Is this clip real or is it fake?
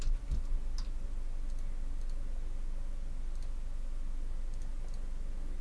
real